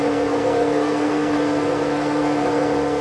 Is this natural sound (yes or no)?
no